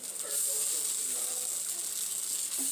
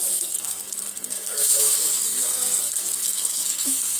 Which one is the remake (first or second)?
second